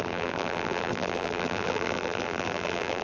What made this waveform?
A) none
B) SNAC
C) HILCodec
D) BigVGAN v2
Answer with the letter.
D